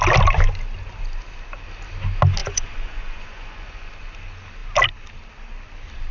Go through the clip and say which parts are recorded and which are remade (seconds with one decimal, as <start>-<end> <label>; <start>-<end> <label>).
0.0-2.4 recorded; 2.4-3.9 remade; 3.9-6.1 recorded